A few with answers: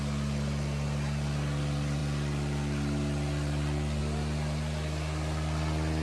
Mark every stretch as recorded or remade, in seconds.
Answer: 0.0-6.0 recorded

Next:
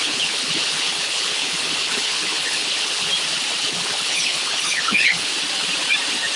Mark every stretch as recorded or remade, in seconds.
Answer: 0.0-3.1 remade; 3.1-3.6 recorded; 3.6-5.3 remade; 5.3-6.4 recorded

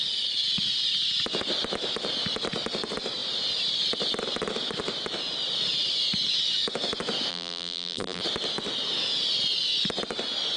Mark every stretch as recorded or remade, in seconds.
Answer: 0.0-7.3 recorded; 7.3-8.2 remade; 8.2-10.6 recorded

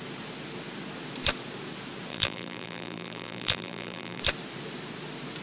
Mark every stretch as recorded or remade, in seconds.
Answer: 0.0-2.1 recorded; 2.1-4.2 remade; 4.2-5.4 recorded

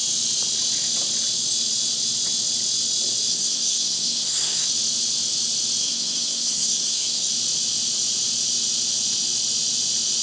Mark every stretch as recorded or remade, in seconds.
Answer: 0.0-3.3 recorded; 3.3-4.7 remade; 4.7-5.8 recorded; 5.8-7.3 remade; 7.3-10.2 recorded

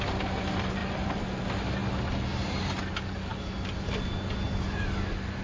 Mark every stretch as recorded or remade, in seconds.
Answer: 0.0-0.8 recorded; 0.8-1.4 remade; 1.4-5.4 recorded